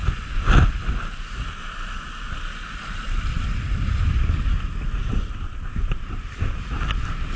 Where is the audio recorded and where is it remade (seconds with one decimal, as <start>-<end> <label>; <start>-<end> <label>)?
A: 0.0-5.0 recorded; 5.0-6.8 remade; 6.8-7.4 recorded